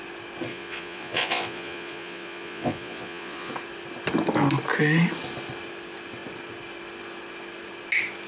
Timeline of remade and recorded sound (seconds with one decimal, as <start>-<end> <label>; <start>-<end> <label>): 0.0-0.5 recorded; 0.5-3.5 remade; 3.5-8.3 recorded